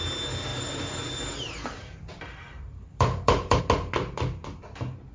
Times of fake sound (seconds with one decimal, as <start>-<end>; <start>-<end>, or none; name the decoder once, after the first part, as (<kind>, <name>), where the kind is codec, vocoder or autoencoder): 0.5-3.6 (vocoder, BigVGAN v2)